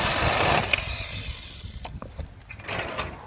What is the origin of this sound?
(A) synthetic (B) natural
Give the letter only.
B